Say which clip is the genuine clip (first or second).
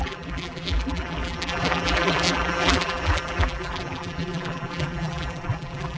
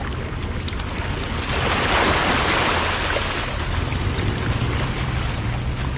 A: second